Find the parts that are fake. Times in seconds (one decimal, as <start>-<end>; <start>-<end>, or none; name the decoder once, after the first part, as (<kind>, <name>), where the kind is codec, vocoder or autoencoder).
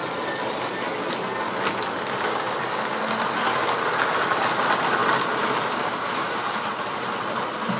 none